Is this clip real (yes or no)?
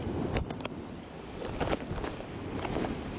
yes